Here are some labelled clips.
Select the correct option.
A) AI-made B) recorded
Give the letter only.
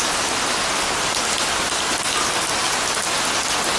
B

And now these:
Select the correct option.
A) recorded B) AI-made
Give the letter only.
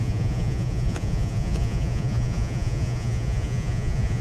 B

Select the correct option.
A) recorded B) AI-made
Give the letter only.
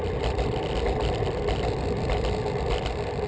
A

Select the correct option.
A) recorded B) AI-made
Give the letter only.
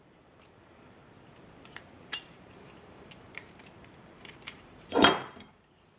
B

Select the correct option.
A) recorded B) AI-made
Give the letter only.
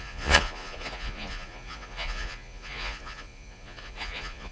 B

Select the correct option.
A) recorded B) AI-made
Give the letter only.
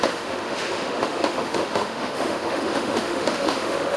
B